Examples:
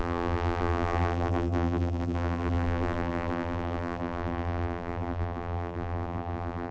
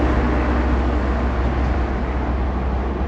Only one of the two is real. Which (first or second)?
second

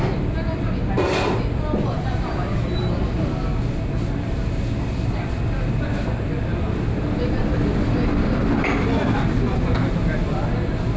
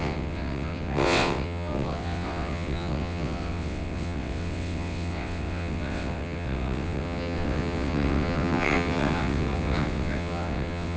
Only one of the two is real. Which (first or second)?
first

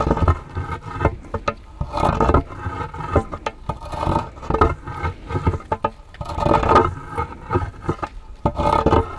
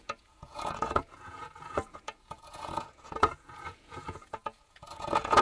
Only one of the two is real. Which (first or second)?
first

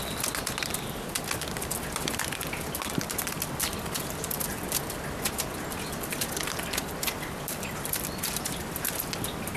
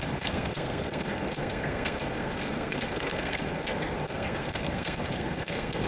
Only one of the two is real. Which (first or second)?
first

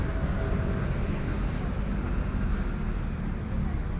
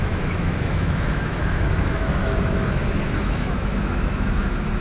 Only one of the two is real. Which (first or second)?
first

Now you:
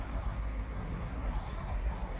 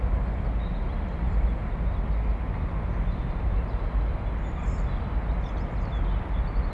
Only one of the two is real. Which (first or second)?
second